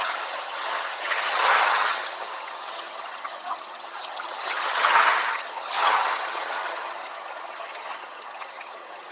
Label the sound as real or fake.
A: fake